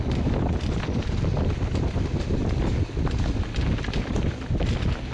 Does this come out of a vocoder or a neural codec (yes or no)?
no